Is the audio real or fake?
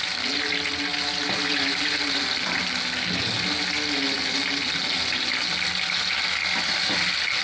real